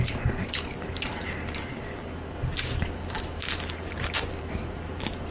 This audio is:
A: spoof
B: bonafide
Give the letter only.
A